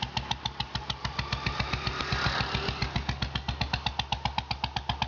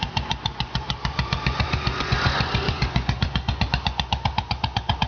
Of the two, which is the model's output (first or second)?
second